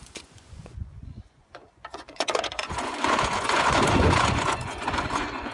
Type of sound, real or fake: fake